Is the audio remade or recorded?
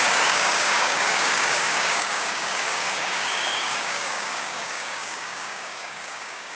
remade